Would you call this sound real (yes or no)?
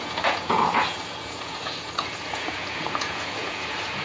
no